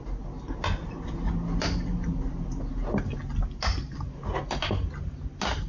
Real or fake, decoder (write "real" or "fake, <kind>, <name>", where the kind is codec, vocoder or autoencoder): real